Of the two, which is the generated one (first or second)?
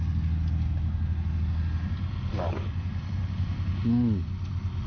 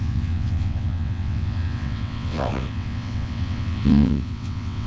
second